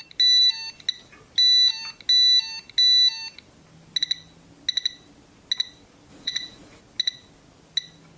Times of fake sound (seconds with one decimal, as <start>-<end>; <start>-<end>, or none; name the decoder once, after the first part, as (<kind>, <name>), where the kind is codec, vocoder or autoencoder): 6.1-6.8 (vocoder, Vocos)